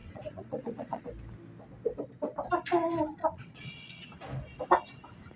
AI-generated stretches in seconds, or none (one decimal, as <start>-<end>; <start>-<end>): 0.0-1.0; 3.2-4.1